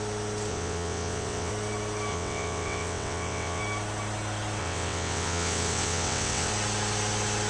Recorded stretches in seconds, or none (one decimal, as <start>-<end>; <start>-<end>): 0.0-0.5; 1.5-2.1; 3.6-4.6; 6.5-7.5